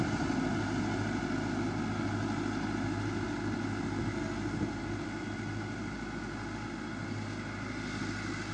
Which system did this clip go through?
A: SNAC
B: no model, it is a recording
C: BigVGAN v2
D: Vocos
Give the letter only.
B